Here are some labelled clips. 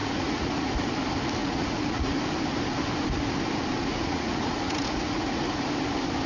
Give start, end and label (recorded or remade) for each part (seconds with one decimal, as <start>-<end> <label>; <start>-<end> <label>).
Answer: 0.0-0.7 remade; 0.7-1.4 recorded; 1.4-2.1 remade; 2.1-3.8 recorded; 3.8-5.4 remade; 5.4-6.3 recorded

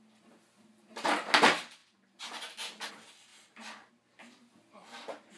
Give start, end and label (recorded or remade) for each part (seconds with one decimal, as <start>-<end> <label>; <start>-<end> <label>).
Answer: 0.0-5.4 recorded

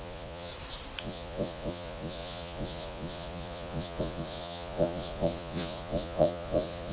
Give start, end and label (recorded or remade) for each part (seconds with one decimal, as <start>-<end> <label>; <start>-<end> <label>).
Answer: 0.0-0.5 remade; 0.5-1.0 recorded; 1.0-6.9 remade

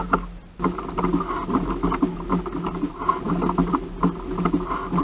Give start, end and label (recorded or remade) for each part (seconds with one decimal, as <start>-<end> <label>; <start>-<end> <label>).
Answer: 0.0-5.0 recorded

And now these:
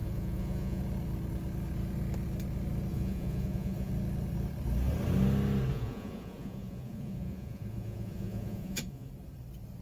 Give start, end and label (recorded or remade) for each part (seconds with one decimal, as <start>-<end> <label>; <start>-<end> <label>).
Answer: 0.0-0.8 remade; 0.8-2.9 recorded; 2.9-3.9 remade; 3.9-5.7 recorded; 5.7-9.1 remade; 9.1-9.8 recorded